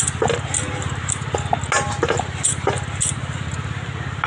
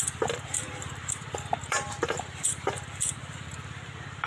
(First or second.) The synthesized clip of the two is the second